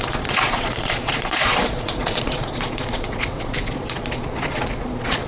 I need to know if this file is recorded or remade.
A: remade